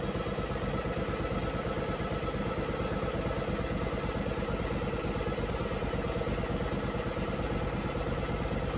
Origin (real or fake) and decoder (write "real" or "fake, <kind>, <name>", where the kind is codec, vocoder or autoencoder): real